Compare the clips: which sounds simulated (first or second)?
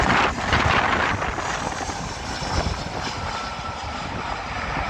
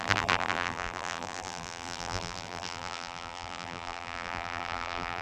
second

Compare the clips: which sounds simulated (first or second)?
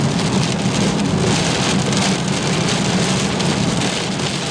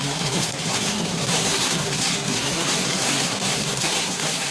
second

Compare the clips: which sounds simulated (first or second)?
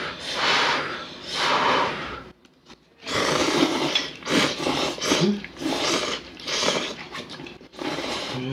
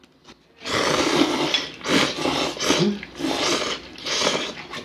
first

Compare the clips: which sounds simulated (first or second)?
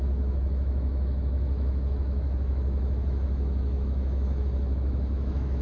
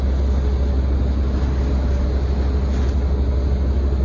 first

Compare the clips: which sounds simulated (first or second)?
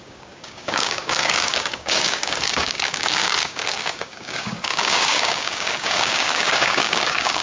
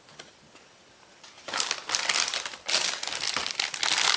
first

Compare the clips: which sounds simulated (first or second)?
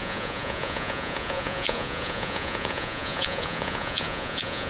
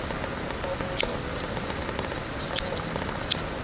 first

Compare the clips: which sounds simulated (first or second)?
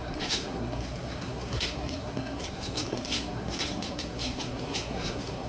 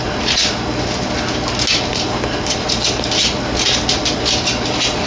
first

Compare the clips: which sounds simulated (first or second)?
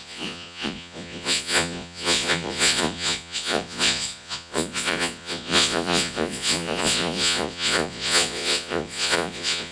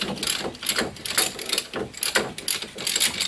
first